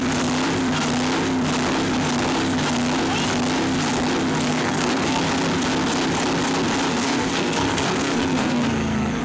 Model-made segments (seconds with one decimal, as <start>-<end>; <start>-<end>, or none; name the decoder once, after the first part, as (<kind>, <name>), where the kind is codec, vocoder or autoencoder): 4.5-5.2 (codec, SNAC); 6.9-9.2